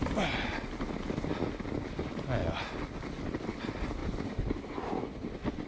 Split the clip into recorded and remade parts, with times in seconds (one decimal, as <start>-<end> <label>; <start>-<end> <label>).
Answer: 0.0-4.0 recorded; 4.0-4.8 remade; 4.8-5.7 recorded